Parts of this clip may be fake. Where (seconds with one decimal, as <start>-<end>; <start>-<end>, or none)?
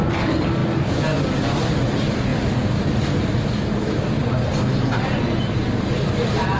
none